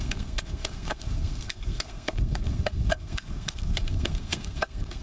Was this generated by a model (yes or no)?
yes